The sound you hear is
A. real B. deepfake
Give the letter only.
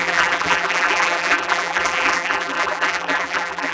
B